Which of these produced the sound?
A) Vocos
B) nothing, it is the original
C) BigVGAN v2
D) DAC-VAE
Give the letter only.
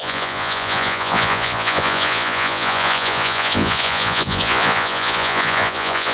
A